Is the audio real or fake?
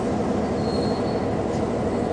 real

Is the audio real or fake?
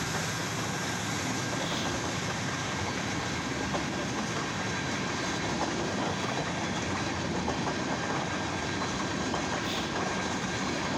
real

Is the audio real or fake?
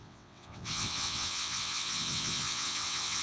fake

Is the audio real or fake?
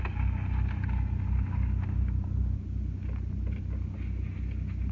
real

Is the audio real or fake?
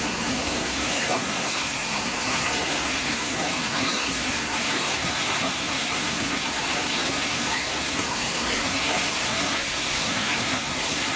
fake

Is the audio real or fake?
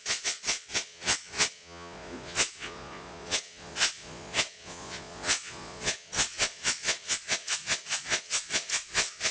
fake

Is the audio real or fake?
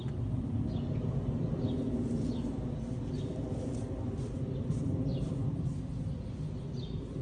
real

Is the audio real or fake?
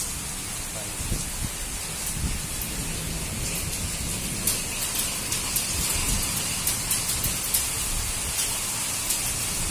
real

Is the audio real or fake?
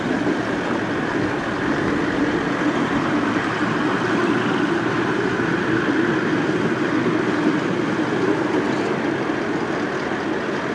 real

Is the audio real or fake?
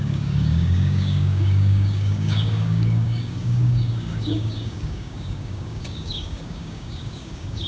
fake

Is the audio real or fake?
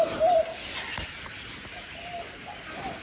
real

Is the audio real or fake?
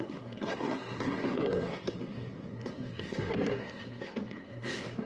fake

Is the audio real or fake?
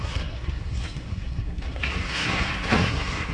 fake